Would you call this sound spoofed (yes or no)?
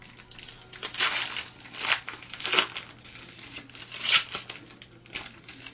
no